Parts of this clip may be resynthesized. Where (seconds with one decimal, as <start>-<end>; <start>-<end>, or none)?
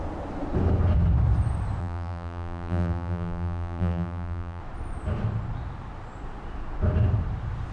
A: 1.8-4.6